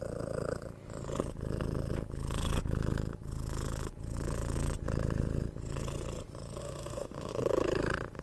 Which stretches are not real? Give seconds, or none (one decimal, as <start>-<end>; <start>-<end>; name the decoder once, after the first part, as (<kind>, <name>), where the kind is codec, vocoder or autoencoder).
6.6-7.3 (autoencoder, DAC-VAE)